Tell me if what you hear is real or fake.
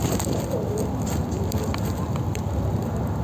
real